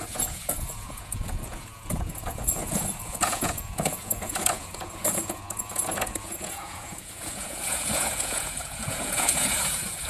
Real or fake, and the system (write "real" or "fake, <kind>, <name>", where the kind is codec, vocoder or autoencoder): fake, vocoder, Vocos